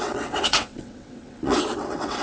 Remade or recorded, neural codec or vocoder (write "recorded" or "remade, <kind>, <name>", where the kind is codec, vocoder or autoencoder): remade, vocoder, WaveNeXt